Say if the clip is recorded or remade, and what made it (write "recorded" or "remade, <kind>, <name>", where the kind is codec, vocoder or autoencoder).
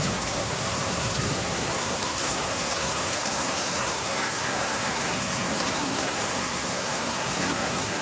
remade, codec, SNAC